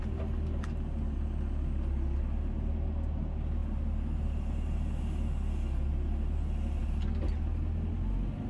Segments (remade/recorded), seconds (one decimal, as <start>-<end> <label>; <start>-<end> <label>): 0.0-8.5 recorded